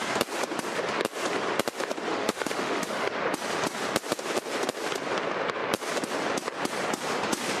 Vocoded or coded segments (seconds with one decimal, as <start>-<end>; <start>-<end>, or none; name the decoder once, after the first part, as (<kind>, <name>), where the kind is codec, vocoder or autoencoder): 2.1-3.1 (autoencoder, DAC-VAE)